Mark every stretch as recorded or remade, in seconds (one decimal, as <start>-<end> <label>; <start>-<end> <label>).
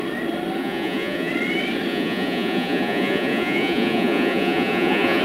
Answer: 0.0-0.6 recorded; 0.6-1.3 remade; 1.3-1.9 recorded; 1.9-5.2 remade